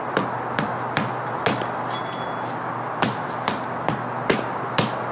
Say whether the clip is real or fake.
real